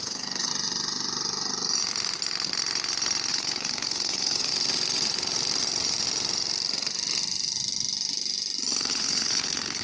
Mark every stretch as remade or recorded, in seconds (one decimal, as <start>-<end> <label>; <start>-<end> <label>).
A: 0.0-0.5 remade; 0.5-3.3 recorded; 3.3-4.5 remade; 4.5-8.9 recorded; 8.9-9.8 remade